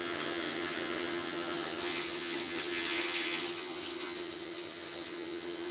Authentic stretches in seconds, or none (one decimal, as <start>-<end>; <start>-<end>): none